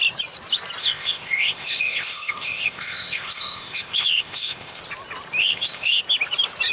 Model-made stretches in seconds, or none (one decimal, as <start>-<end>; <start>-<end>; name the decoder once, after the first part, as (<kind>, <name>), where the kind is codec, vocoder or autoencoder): 0.8-4.8 (codec, ZipCodec); 5.4-6.0